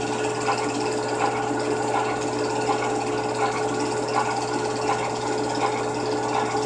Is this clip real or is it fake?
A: real